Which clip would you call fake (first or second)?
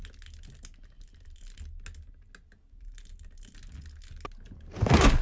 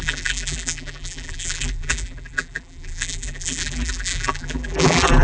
second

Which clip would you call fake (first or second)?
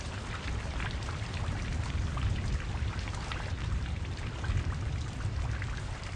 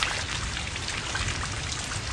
first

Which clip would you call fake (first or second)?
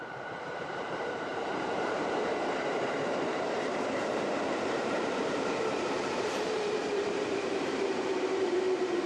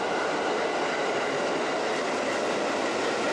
first